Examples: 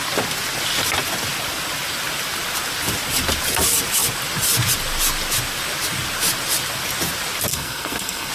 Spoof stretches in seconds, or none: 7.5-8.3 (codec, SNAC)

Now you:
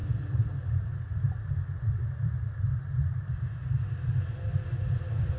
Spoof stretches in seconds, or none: none

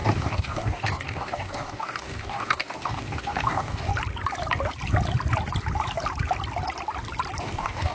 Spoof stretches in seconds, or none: 0.0-3.9 (codec, DAC); 7.4-7.9